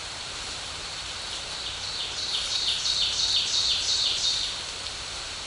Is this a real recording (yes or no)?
no